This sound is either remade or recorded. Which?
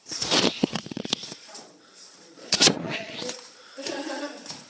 remade